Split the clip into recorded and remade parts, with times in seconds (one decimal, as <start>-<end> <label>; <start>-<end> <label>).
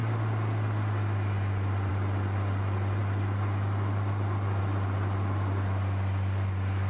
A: 0.0-6.9 recorded